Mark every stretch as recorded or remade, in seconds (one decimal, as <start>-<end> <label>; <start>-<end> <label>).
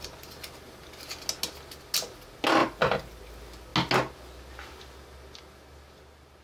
0.0-2.6 recorded; 2.6-3.3 remade; 3.3-6.4 recorded